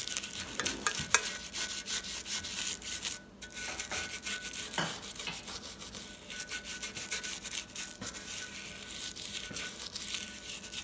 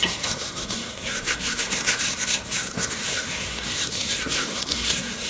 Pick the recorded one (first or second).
first